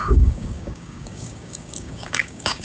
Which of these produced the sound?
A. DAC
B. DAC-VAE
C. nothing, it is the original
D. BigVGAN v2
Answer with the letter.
A